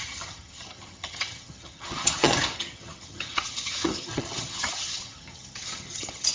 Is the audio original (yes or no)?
no